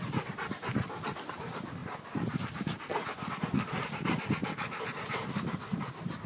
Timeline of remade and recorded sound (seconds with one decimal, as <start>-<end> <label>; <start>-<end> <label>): 0.0-6.3 recorded